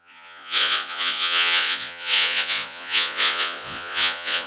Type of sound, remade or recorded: remade